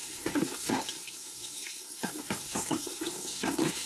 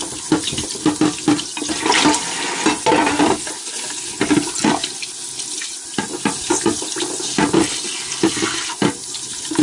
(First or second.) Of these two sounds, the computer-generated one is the first